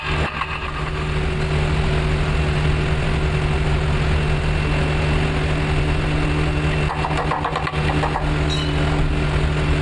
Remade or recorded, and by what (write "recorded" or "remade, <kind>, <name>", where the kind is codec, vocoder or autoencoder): recorded